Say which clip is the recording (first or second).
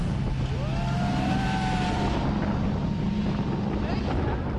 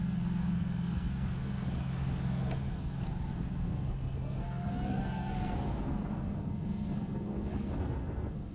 first